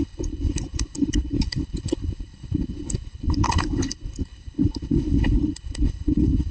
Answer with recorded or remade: remade